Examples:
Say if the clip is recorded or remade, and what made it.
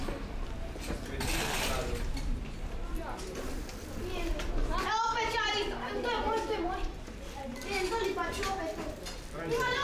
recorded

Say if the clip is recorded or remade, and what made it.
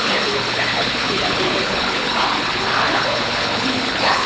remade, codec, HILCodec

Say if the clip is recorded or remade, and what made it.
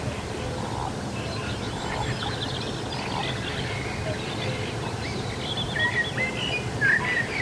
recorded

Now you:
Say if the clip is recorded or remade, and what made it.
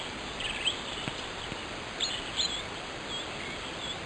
remade, vocoder, BigVGAN v2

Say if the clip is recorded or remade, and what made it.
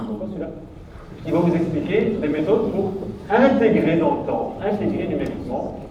remade, vocoder, BigVGAN v2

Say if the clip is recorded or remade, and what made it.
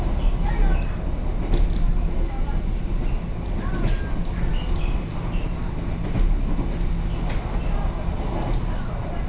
recorded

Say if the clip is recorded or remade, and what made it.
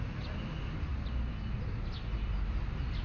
recorded